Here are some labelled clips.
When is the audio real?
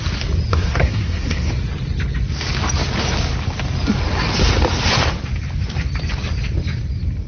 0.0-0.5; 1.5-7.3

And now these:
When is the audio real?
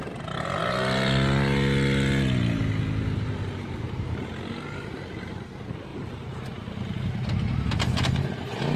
0.0-8.8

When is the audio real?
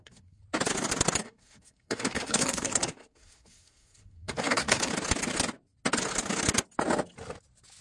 0.4-1.2; 4.9-7.8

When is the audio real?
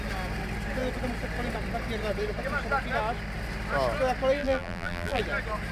0.0-4.4; 5.2-5.7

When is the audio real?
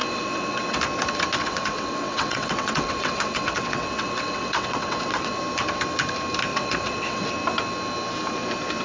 0.8-1.4; 5.4-6.5; 7.3-8.8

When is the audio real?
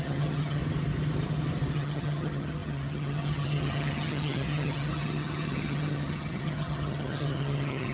0.6-1.7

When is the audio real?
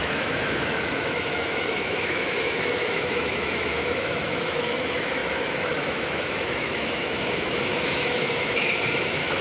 none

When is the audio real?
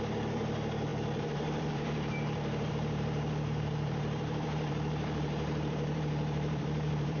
none